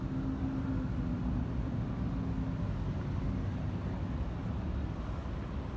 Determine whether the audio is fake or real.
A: real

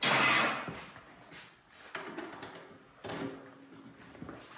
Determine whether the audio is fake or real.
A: real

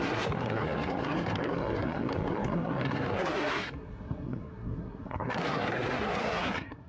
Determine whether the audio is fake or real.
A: fake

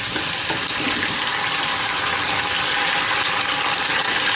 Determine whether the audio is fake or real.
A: real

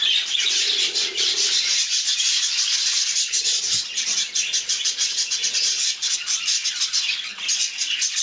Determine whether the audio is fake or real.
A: fake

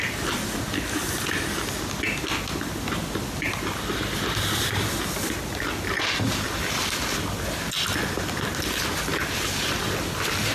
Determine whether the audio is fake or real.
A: real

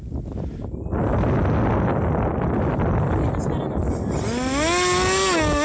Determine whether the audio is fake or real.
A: real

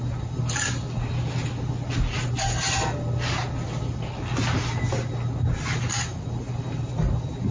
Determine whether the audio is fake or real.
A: real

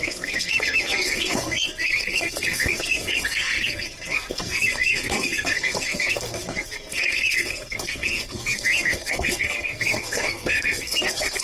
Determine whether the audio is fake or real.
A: fake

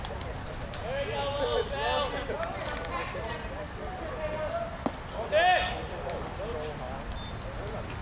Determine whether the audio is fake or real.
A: real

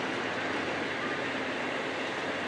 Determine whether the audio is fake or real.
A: real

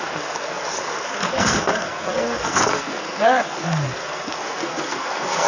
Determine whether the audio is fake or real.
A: fake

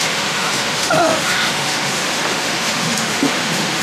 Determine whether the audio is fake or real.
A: fake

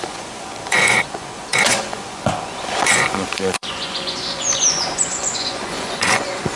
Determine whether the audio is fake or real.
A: fake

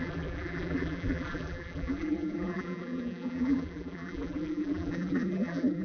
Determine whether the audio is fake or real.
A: fake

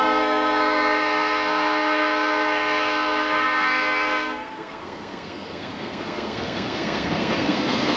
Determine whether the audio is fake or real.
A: fake